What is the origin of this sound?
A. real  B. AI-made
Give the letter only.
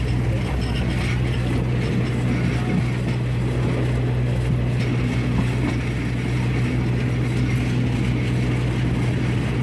A